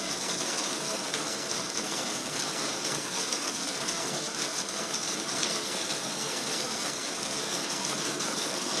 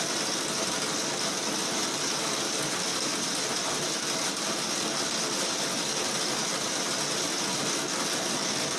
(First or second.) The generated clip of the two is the first